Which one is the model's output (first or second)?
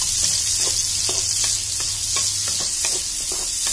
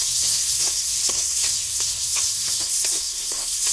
second